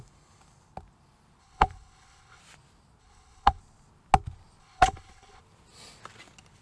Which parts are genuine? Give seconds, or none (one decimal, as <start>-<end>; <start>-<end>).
0.0-1.4; 2.4-3.0; 3.6-4.6; 5.4-6.6